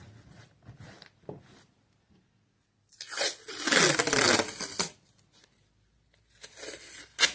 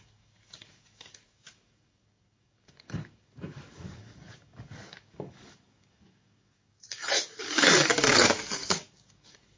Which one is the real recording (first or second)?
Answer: first